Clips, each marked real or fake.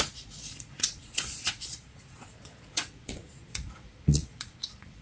fake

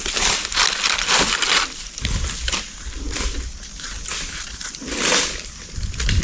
real